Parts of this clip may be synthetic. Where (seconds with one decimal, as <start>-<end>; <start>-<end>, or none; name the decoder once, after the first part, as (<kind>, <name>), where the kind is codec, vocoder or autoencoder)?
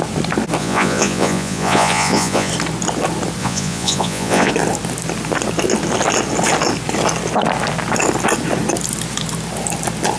0.6-2.5 (vocoder, Vocos); 3.4-4.5